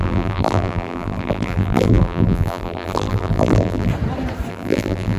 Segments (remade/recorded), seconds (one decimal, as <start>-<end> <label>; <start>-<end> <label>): 0.0-3.9 remade; 3.9-4.5 recorded; 4.5-5.2 remade